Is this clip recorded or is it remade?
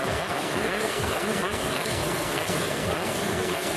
remade